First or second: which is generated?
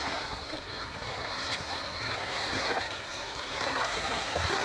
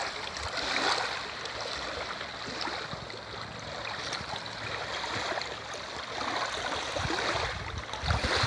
first